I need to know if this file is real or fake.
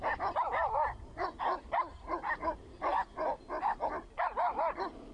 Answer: real